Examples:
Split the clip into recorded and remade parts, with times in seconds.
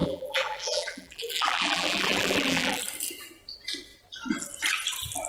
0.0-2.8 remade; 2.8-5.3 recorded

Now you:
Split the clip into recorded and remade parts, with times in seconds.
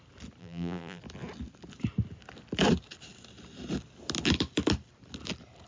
0.0-0.4 recorded; 0.4-1.0 remade; 1.0-5.7 recorded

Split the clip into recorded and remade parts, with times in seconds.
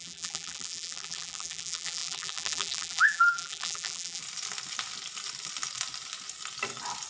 0.0-4.2 remade; 4.2-7.1 recorded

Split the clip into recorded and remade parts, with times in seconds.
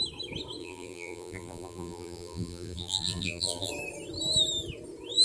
0.0-0.6 recorded; 0.6-3.7 remade; 3.7-5.2 recorded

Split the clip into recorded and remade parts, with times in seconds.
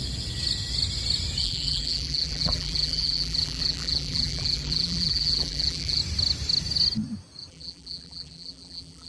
0.0-1.4 recorded; 1.4-6.0 remade; 6.0-7.5 recorded; 7.5-9.1 remade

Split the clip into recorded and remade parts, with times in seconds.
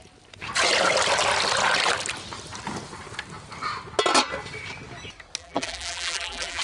0.0-5.4 recorded; 5.4-6.6 remade